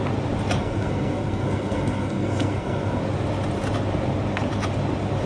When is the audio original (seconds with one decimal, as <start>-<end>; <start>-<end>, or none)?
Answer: 0.0-0.6; 3.0-5.3